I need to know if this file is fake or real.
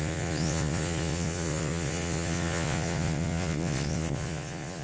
fake